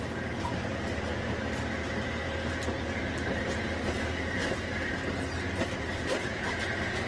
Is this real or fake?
real